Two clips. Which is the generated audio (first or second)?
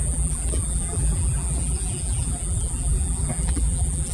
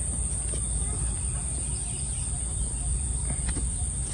first